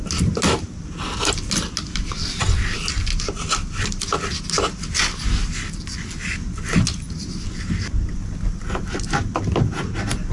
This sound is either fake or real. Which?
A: real